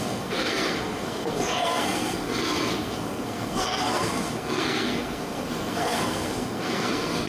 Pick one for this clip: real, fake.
fake